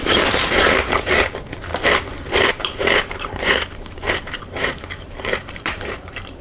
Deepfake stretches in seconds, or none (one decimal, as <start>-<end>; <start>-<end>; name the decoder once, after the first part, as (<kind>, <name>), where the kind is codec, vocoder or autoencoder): 0.0-1.7 (vocoder, BigVGAN v2); 2.5-6.4